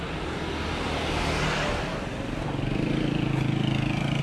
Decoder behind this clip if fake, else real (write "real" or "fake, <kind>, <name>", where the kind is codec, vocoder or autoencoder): real